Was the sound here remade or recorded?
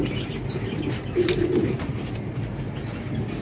recorded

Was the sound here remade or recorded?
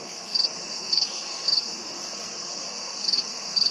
remade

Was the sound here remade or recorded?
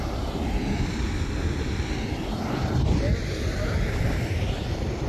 recorded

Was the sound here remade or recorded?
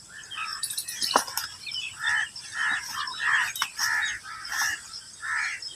recorded